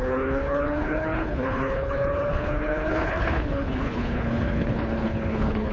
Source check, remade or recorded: remade